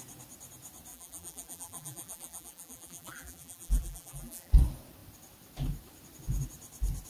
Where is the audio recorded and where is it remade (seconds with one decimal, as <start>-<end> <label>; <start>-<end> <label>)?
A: 0.0-0.9 recorded; 0.9-4.5 remade; 4.5-7.1 recorded